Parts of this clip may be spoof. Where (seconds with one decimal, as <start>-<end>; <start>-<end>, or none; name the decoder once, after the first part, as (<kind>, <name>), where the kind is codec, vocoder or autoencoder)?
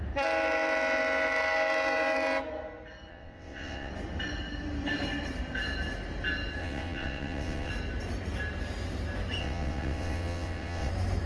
3.1-3.9 (vocoder, WaveNeXt); 6.6-7.7; 9.4-10.9